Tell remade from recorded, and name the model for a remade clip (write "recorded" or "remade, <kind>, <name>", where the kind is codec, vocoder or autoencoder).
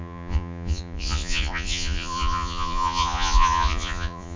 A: remade, vocoder, Vocos